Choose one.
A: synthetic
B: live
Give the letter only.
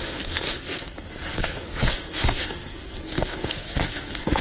A